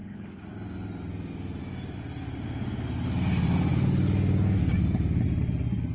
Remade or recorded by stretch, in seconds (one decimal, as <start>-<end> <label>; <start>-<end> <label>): 0.0-5.9 recorded